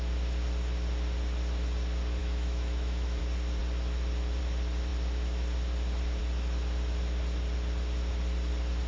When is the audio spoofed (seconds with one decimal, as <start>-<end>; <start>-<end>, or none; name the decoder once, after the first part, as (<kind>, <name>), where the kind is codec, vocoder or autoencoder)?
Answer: 2.2-3.2 (autoencoder, DAC-VAE)